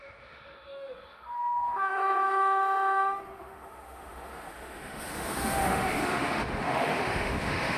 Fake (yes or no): yes